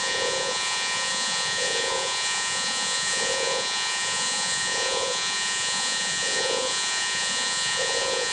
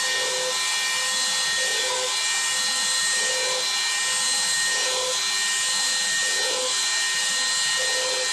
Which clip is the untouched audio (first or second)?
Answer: second